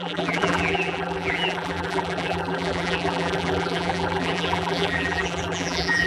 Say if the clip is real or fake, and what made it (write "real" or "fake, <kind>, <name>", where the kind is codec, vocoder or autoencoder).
fake, vocoder, BigVGAN v2